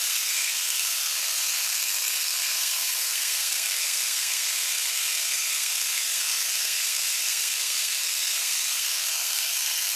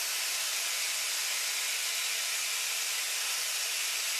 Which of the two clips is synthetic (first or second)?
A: first